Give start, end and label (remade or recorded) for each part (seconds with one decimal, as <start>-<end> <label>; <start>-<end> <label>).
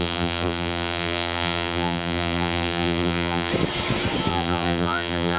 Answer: 0.0-3.5 remade; 3.5-4.3 recorded; 4.3-5.4 remade